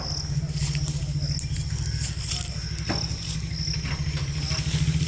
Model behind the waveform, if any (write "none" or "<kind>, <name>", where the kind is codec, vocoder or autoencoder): none